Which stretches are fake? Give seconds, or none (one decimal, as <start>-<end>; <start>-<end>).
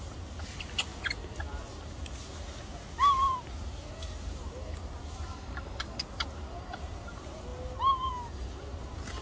5.3-6.0